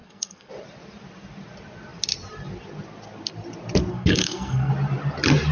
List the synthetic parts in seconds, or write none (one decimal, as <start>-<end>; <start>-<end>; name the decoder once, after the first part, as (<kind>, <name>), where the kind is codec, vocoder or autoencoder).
0.0-0.5 (codec, SNAC); 3.9-4.7